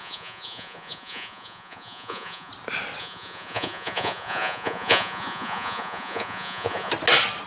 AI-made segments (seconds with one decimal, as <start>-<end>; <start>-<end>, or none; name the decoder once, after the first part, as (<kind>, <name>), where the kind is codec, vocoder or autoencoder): 0.0-2.5 (vocoder, Vocos); 3.0-6.9